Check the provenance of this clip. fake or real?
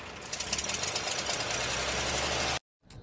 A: real